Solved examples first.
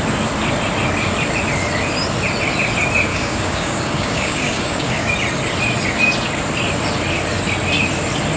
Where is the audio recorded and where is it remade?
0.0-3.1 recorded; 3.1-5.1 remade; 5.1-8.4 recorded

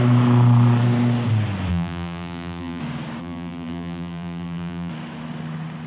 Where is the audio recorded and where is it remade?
0.0-1.7 recorded; 1.7-2.8 remade; 2.8-3.2 recorded; 3.2-4.9 remade; 4.9-5.9 recorded

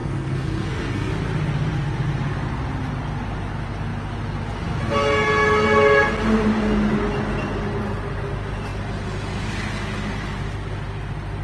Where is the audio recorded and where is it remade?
0.0-1.1 remade; 1.1-11.4 recorded

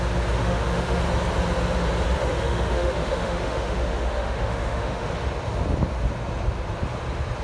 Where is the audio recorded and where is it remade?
0.0-0.4 recorded; 0.4-1.0 remade; 1.0-2.2 recorded; 2.2-5.1 remade; 5.1-7.4 recorded

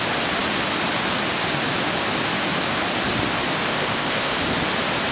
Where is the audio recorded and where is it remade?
0.0-3.7 recorded; 3.7-4.3 remade; 4.3-5.1 recorded

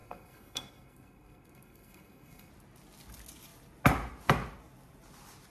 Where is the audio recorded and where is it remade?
0.0-2.5 remade; 2.5-5.5 recorded